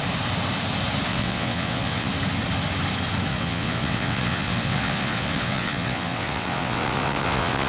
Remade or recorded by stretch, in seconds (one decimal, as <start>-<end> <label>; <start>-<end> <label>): 0.0-1.1 recorded; 1.1-2.1 remade; 2.1-3.3 recorded; 3.3-7.7 remade